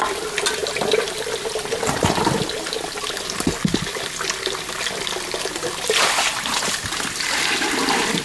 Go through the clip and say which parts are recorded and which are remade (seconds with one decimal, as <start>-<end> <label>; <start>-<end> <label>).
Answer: 0.0-8.2 recorded